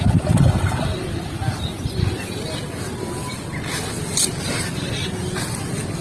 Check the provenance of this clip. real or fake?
real